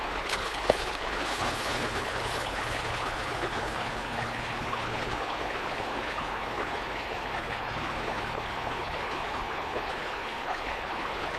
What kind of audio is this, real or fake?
fake